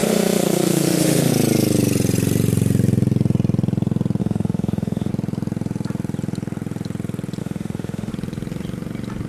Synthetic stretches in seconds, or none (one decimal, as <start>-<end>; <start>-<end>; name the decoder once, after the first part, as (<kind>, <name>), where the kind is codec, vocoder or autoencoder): 0.0-1.3 (autoencoder, DAC-VAE); 4.2-5.1; 7.4-8.1